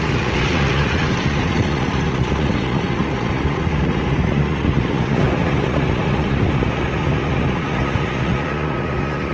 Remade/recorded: remade